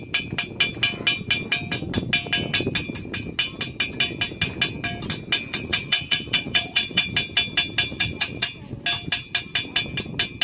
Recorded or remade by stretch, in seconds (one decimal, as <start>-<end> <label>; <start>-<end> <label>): 0.0-5.5 recorded; 5.5-7.1 remade; 7.1-7.9 recorded; 7.9-8.5 remade; 8.5-10.4 recorded